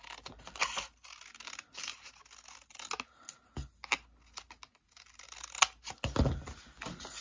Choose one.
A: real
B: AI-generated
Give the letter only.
A